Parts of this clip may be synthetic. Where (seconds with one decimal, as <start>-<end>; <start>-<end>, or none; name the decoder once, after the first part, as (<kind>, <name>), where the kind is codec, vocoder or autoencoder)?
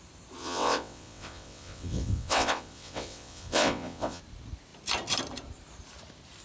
0.4-4.2 (vocoder, WaveNeXt)